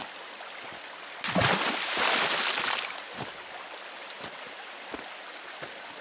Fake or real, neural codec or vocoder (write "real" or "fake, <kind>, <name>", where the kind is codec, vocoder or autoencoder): real